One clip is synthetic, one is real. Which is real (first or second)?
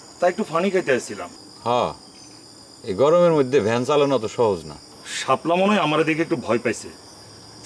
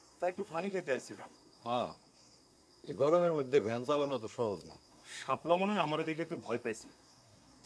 first